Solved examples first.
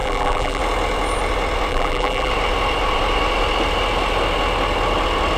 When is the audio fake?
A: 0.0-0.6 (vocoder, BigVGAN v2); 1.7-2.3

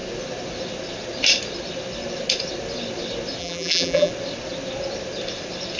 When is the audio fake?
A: 3.4-4.1 (vocoder, BigVGAN v2)

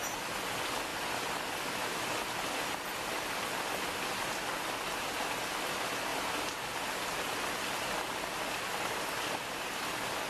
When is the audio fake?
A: none

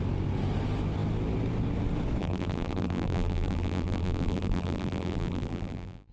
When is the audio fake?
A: 2.2-6.1 (vocoder, BigVGAN v2)